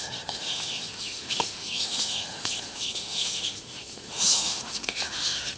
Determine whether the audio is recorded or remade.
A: remade